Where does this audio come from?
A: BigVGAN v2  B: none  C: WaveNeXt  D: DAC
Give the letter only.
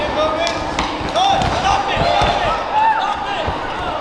B